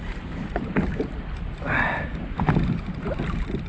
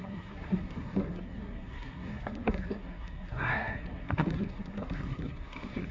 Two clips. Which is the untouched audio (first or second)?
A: first